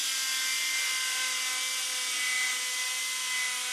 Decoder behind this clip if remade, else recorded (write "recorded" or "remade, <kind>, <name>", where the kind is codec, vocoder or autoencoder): recorded